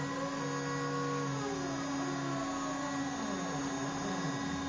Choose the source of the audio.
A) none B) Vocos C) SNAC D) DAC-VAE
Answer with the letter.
A